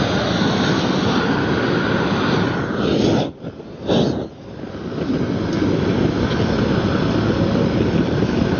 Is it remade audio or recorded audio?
recorded